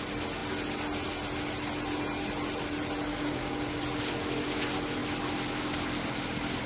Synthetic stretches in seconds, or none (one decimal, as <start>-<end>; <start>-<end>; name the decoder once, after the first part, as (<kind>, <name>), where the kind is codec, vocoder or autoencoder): 3.1-3.8 (codec, DAC)